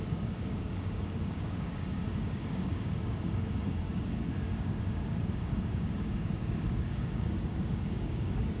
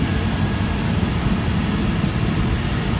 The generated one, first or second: first